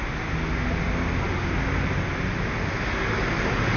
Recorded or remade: recorded